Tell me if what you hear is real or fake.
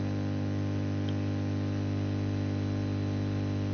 real